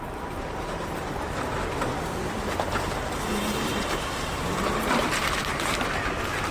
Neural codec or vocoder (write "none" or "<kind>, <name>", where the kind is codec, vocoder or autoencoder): vocoder, BigVGAN v2